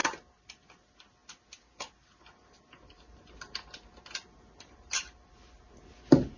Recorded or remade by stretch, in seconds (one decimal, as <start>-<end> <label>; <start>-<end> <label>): 0.0-6.4 recorded